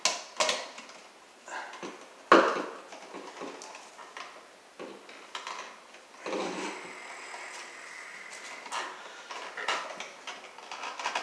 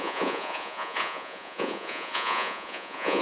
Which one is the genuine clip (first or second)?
first